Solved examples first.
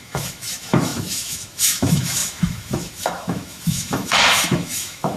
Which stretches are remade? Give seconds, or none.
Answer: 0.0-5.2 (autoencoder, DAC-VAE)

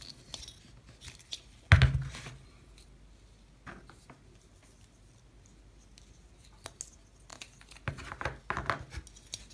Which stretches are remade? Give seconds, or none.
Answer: none

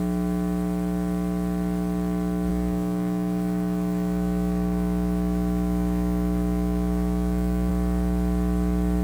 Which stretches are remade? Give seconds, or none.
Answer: 2.5-7.7 (autoencoder, DAC-VAE)

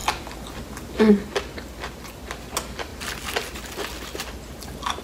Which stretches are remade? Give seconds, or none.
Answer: none

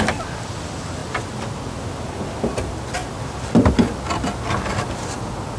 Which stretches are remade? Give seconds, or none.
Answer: none